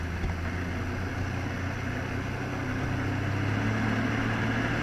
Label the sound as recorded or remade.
recorded